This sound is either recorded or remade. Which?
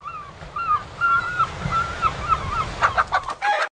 recorded